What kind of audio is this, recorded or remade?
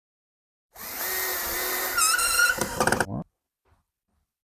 remade